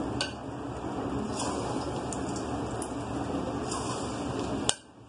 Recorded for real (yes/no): yes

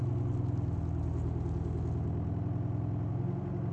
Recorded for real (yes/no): yes